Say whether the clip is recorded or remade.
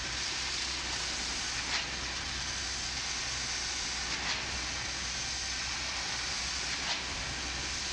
recorded